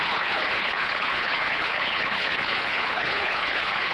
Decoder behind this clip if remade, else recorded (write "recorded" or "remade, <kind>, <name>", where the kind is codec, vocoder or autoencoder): remade, codec, HILCodec